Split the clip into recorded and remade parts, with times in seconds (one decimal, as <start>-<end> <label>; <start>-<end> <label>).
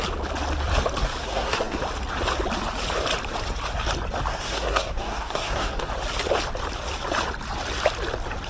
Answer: 0.0-1.2 recorded; 1.2-1.8 remade; 1.8-4.3 recorded; 4.3-5.9 remade; 5.9-8.5 recorded